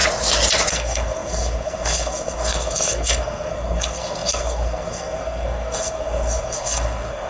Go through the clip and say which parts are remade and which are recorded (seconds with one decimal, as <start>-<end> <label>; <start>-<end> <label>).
0.0-0.7 recorded; 0.7-7.3 remade